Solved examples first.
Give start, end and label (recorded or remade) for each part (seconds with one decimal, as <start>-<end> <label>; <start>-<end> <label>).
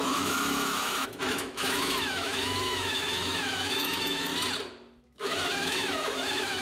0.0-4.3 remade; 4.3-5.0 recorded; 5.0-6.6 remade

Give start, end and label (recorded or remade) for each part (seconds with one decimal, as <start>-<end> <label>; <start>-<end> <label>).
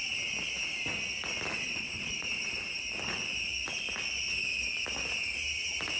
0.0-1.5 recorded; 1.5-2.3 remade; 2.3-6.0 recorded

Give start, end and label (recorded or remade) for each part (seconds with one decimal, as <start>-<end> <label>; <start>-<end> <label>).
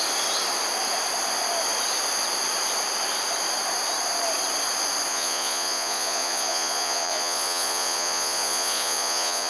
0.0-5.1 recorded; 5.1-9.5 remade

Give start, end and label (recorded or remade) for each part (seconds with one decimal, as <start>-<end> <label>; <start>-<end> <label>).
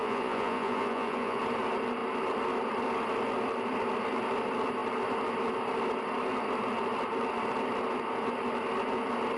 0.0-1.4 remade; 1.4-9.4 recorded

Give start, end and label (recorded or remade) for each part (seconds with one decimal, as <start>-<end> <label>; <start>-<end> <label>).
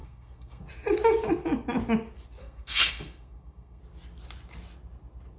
0.0-0.6 remade; 0.6-2.4 recorded; 2.4-3.8 remade; 3.8-5.4 recorded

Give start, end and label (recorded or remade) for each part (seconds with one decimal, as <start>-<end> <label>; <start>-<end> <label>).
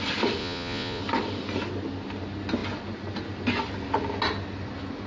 0.0-0.4 recorded; 0.4-1.0 remade; 1.0-5.1 recorded